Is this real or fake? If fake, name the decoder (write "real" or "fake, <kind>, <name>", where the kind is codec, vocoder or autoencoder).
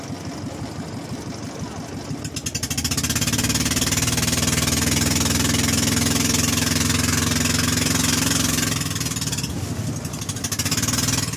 real